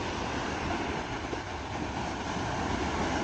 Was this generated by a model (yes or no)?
no